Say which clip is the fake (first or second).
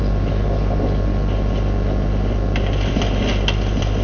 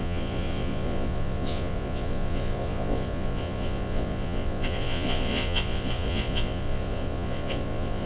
second